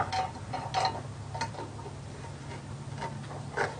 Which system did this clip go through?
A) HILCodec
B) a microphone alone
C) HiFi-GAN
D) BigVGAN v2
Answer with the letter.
B